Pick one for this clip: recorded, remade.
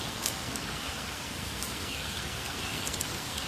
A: remade